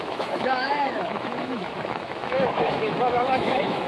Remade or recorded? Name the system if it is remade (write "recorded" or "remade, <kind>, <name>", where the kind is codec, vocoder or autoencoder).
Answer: remade, autoencoder, DAC-VAE